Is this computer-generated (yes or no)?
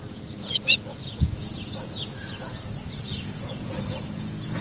yes